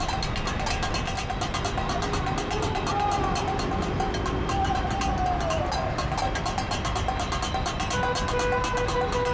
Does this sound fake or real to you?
real